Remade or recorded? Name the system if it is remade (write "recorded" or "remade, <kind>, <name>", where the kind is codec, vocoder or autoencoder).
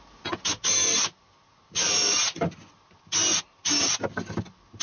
recorded